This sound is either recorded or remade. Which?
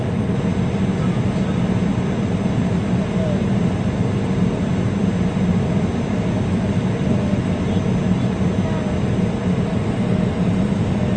recorded